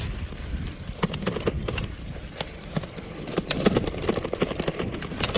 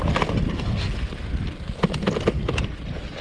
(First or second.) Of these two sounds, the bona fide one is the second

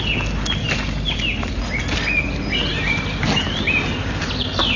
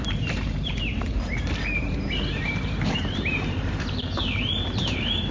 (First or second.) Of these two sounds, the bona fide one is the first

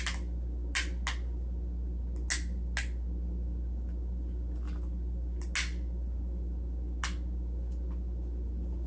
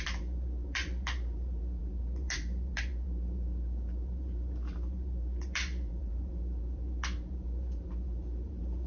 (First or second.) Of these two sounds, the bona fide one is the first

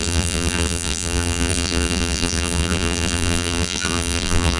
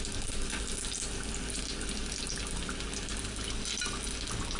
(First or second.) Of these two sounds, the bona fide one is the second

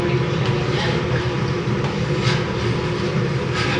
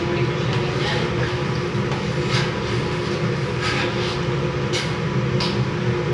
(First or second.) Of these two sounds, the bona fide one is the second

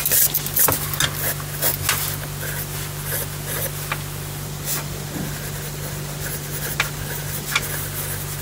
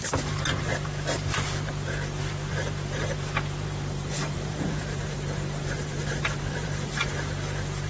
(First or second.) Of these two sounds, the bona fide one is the first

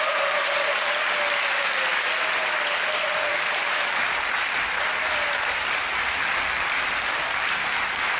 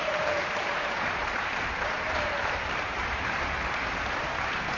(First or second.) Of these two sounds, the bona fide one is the first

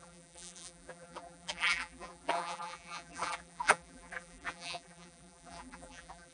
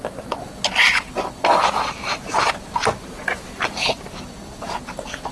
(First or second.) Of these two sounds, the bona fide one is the second